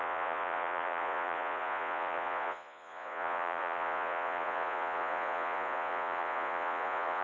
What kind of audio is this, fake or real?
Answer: fake